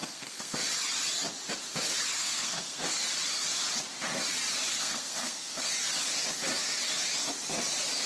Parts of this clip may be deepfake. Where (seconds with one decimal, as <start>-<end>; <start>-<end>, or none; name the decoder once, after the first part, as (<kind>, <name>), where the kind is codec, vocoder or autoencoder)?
0.0-0.6 (codec, SNAC); 2.2-3.0; 4.7-5.7